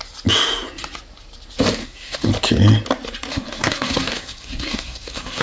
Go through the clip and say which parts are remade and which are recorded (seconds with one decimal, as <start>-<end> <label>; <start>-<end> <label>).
0.0-1.8 recorded; 1.8-2.3 remade; 2.3-3.3 recorded; 3.3-5.4 remade

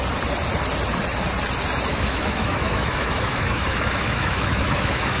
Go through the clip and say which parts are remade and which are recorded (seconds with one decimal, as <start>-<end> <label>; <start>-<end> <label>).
0.0-1.9 recorded; 1.9-5.2 remade

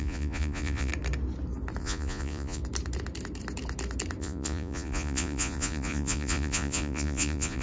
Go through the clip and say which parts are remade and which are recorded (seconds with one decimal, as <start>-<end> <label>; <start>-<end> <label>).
0.0-0.9 remade; 0.9-1.8 recorded; 1.8-2.6 remade; 2.6-4.2 recorded; 4.2-7.6 remade